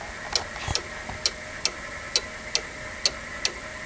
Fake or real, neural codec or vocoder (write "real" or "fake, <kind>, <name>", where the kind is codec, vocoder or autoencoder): real